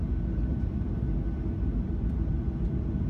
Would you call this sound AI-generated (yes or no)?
no